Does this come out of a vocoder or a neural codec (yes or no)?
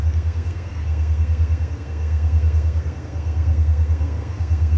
yes